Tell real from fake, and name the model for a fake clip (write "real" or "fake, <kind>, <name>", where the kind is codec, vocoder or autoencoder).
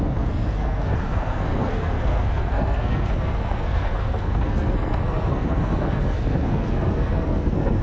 fake, codec, SNAC